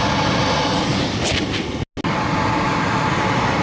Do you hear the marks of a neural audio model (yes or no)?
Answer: no